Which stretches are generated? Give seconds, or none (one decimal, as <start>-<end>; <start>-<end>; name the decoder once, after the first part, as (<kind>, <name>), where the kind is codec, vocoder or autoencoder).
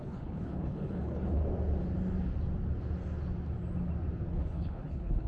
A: 0.0-1.4 (codec, HILCodec); 4.3-5.3